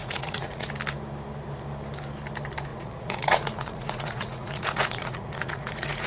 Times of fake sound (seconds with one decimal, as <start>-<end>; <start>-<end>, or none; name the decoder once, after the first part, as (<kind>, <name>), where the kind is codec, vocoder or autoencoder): 0.0-0.7 (vocoder, Vocos); 2.7-6.1